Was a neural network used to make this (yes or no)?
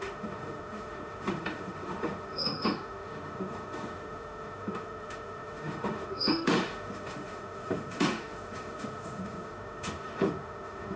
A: yes